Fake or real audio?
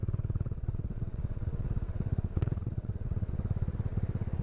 fake